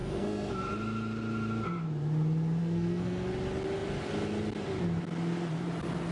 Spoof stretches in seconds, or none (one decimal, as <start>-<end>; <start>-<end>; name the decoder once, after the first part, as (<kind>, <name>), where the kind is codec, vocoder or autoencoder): 0.0-0.5 (codec, SNAC); 2.6-3.3